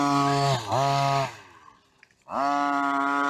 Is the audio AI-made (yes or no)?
no